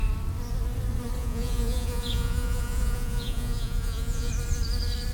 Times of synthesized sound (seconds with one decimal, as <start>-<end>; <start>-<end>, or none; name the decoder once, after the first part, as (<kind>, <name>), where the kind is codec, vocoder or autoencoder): 1.2-4.3 (vocoder, Vocos)